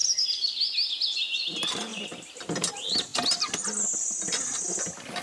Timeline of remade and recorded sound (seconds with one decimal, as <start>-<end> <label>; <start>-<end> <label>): 0.0-0.9 remade; 0.9-5.2 recorded